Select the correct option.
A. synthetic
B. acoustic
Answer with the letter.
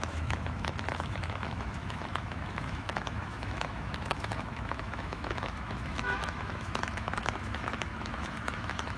A